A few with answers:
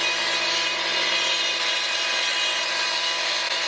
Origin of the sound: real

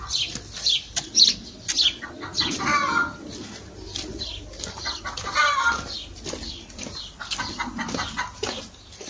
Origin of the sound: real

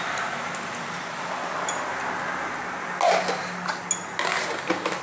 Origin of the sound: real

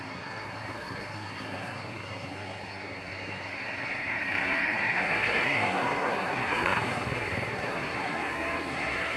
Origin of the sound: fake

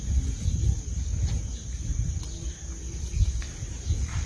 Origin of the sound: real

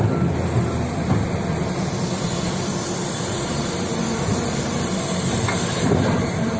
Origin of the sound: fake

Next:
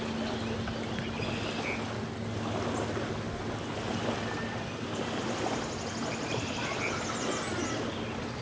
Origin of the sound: real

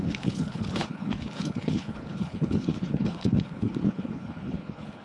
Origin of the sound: fake